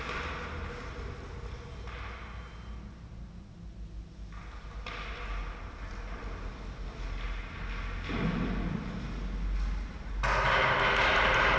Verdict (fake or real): real